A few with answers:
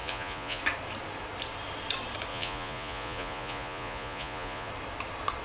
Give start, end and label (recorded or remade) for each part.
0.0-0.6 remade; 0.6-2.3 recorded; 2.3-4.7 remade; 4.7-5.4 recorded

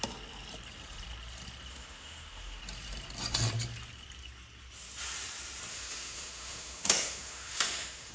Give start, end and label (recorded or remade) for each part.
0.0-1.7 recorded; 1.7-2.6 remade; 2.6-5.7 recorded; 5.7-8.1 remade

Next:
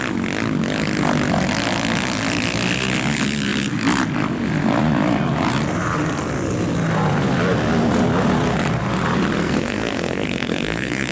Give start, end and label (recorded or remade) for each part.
0.0-9.4 recorded; 9.4-11.1 remade